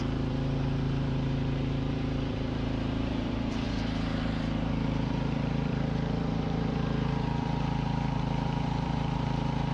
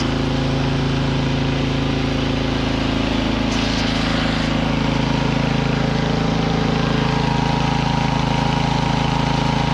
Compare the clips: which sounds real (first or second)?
second